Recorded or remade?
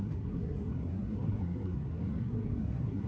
remade